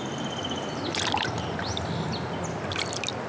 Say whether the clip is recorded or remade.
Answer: recorded